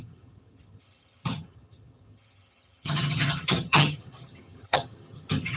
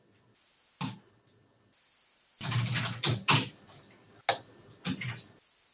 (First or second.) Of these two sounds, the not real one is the first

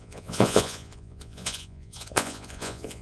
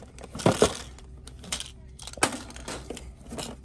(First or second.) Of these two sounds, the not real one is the first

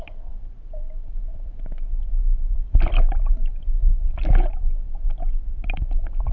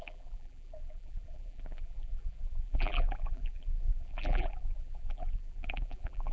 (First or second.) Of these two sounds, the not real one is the second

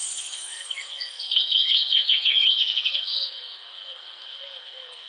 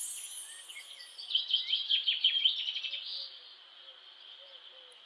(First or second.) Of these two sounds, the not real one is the first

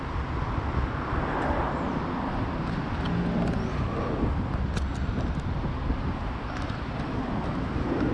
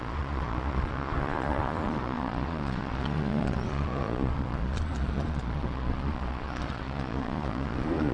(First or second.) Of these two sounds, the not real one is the second